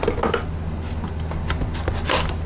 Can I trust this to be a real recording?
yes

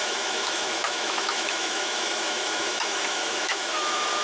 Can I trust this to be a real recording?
no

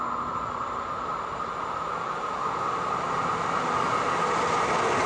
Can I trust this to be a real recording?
yes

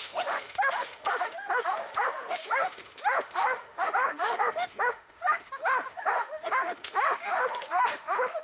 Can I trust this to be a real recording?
no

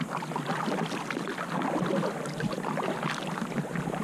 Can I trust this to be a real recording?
yes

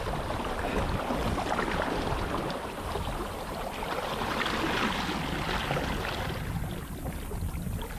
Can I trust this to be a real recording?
yes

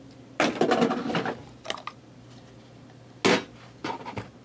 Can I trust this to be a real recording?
yes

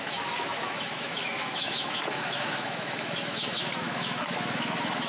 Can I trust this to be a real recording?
no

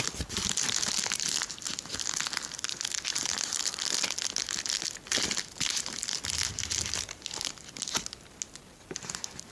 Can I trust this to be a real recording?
yes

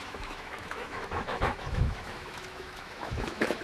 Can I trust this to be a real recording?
no